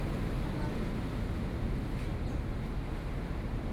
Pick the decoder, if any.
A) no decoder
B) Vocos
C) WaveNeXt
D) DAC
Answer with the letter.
A